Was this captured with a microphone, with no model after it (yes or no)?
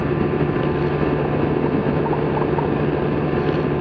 yes